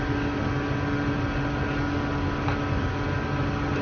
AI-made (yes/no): no